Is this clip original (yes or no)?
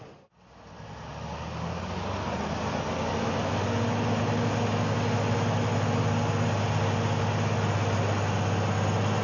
yes